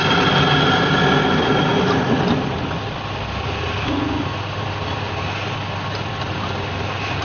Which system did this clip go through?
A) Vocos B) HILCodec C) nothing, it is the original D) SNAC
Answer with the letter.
C